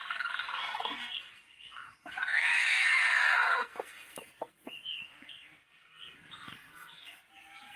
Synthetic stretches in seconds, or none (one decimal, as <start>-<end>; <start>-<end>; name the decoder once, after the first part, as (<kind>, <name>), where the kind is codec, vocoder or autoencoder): 0.0-7.8 (codec, SNAC)